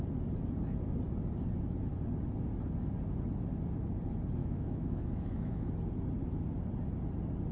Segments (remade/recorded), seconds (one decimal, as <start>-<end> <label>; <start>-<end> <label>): 0.0-4.4 recorded; 4.4-5.7 remade; 5.7-7.5 recorded